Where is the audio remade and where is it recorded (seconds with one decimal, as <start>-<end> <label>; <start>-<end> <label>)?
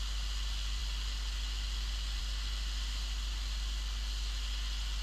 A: 0.0-5.0 recorded